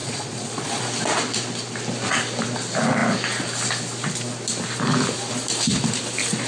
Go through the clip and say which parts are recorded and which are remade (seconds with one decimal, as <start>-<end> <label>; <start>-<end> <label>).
0.0-0.8 remade; 0.8-6.5 recorded